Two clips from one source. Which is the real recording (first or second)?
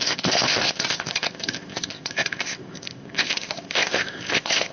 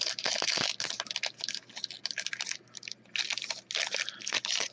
second